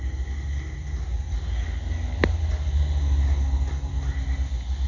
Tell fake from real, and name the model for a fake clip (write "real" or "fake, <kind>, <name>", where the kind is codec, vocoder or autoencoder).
real